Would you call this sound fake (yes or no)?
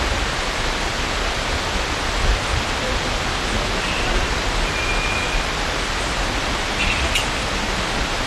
no